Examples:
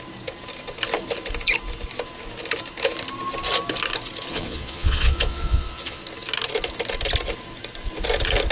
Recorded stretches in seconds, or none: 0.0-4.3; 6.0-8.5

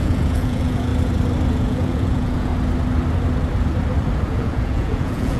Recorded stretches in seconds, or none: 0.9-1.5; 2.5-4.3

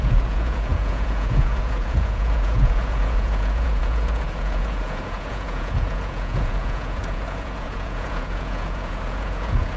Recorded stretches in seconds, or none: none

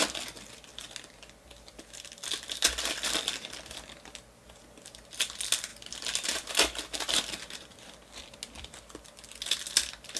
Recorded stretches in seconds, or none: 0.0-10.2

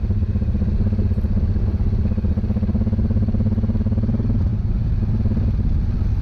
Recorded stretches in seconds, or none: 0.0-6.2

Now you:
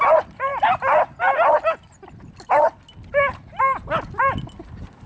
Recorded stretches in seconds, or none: 0.0-5.1